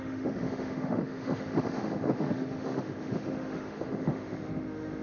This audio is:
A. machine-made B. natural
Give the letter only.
A